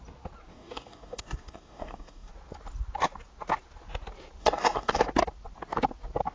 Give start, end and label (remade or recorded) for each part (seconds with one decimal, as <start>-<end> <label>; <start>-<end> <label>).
0.0-0.5 recorded; 0.5-2.3 remade; 2.3-4.4 recorded; 4.4-5.0 remade; 5.0-6.3 recorded